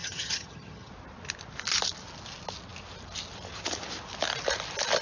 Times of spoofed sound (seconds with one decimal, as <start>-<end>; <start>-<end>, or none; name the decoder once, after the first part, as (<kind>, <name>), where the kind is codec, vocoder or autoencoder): 0.0-0.9 (vocoder, HiFi-GAN)